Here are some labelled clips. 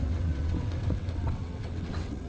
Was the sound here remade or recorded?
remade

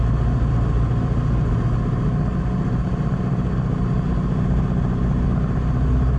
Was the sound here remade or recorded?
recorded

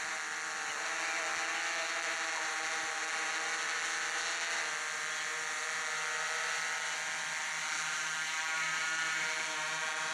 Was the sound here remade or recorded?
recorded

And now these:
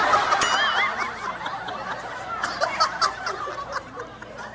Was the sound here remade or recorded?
recorded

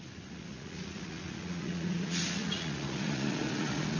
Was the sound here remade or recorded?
remade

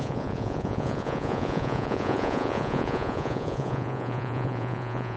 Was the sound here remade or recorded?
remade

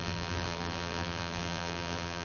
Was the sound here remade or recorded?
remade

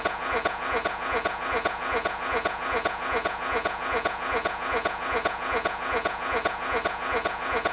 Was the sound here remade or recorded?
remade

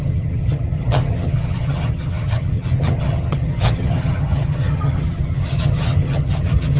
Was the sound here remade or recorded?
remade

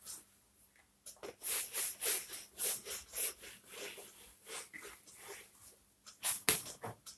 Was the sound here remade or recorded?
recorded